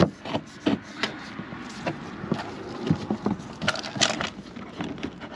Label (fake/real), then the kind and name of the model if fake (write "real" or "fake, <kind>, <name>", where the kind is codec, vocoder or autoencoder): real